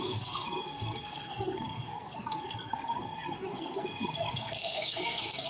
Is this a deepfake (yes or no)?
yes